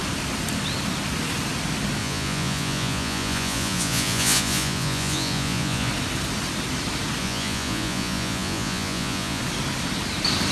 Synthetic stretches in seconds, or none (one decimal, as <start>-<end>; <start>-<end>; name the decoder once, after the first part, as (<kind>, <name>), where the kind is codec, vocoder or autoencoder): 2.0-5.9 (vocoder, Vocos); 7.2-9.4